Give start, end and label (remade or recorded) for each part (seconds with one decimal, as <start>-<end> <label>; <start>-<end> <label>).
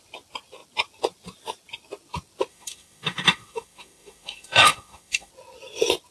0.0-2.5 recorded; 2.5-5.3 remade; 5.3-6.1 recorded